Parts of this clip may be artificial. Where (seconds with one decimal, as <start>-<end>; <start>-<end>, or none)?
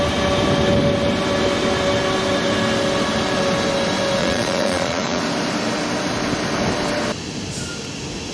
4.2-5.2